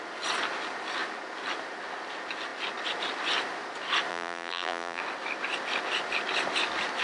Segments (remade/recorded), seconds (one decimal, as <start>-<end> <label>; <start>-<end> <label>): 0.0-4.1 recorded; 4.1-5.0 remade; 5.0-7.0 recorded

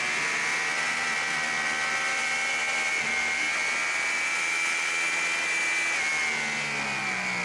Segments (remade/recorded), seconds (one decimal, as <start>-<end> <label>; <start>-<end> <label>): 0.0-0.5 recorded; 0.5-4.9 remade; 4.9-7.4 recorded

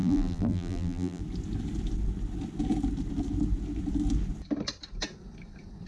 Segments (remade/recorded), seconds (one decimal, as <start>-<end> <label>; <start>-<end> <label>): 0.0-1.2 remade; 1.2-5.9 recorded